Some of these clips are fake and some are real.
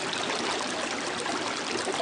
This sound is real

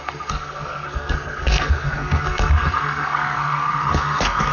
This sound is fake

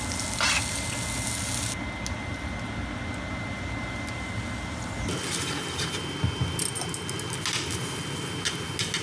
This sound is real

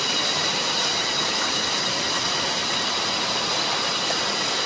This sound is real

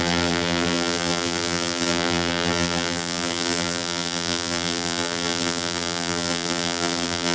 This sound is fake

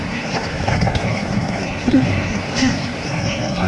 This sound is fake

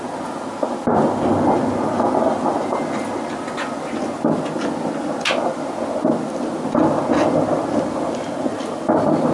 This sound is real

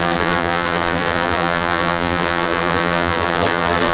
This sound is fake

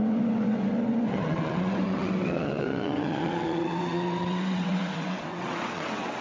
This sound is fake